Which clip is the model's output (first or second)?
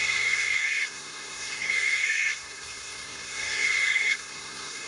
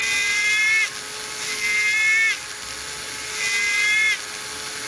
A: first